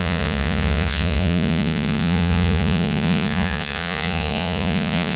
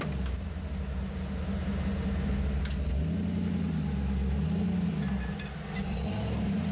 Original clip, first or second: second